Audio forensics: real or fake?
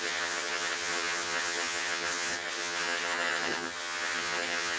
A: fake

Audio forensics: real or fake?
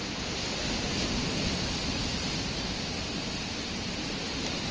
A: real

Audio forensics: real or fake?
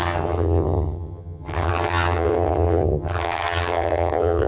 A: fake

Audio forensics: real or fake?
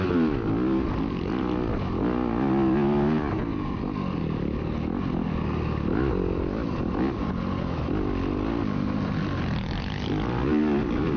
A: real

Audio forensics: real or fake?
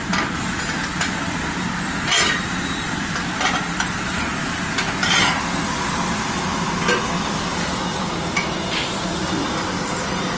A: real